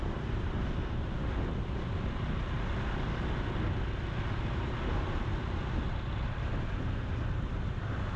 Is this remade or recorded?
recorded